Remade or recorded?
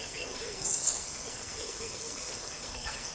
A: remade